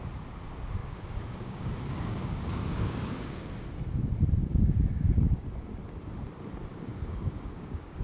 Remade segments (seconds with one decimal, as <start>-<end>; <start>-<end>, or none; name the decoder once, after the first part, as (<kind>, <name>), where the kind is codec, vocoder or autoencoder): 0.8-3.5 (codec, DAC); 4.5-5.4; 6.7-8.0